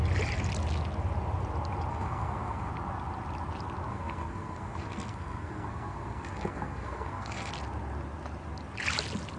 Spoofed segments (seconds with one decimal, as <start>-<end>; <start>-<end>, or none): 1.9-2.7; 3.9-7.5